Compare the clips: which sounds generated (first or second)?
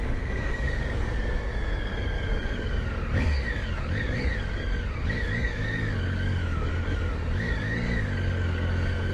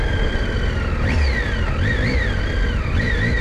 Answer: first